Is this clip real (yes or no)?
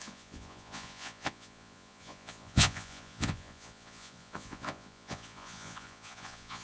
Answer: no